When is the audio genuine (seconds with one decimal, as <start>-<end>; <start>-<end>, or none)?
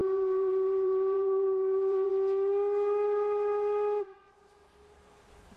2.1-5.6